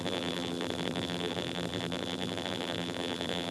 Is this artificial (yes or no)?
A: yes